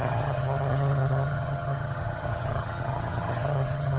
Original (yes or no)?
no